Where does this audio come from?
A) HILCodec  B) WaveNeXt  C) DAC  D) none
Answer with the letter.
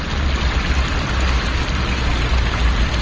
D